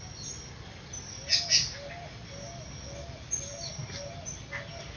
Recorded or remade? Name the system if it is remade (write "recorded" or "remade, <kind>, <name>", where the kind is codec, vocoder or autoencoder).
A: recorded